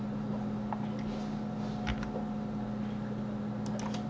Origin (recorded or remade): recorded